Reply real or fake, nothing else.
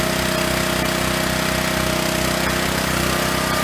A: real